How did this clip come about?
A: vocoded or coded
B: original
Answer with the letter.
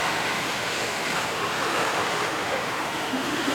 A